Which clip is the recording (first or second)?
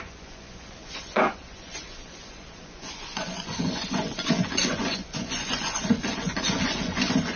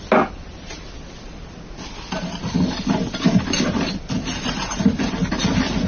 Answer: second